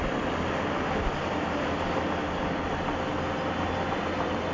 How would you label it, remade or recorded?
recorded